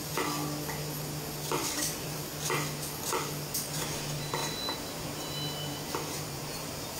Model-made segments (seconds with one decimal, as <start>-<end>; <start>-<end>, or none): 1.6-2.2; 4.4-7.0